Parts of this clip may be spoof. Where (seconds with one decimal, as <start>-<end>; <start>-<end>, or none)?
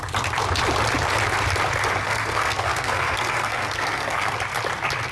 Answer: 2.0-4.3